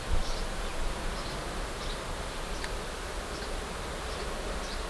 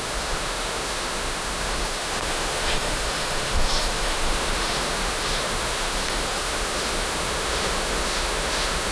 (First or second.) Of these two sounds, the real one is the first